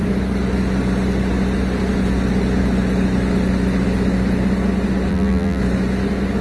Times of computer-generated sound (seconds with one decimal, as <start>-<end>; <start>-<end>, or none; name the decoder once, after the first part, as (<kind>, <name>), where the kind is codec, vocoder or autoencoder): 5.1-5.6 (vocoder, BigVGAN v2)